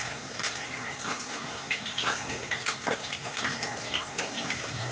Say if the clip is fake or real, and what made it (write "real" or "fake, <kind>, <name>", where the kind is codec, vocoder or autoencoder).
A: fake, codec, SNAC